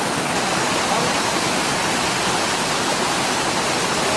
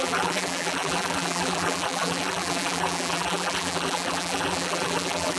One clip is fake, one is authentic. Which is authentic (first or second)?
first